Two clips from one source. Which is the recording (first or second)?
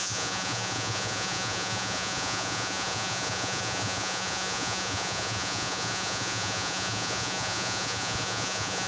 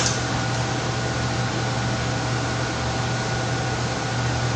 second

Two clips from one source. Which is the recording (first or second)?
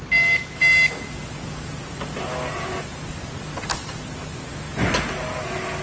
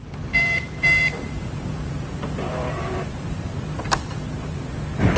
first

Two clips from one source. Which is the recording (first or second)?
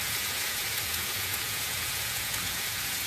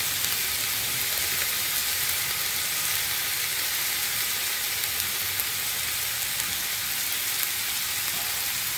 second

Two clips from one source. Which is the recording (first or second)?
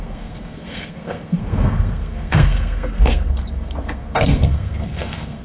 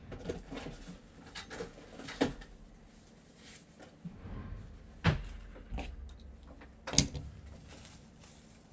second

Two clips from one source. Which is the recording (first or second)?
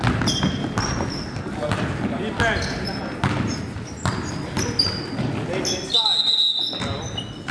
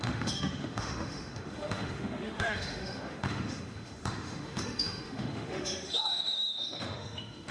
first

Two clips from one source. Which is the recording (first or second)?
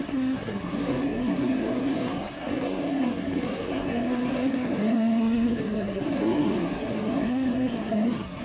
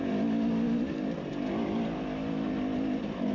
second